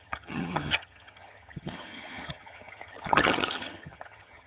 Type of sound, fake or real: fake